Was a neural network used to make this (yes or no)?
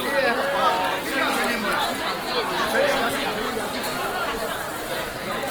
no